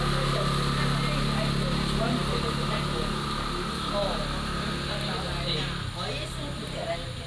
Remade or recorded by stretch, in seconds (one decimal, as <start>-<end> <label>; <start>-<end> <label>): 0.0-7.3 recorded